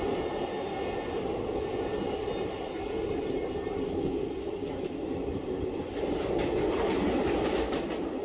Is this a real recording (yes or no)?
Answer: yes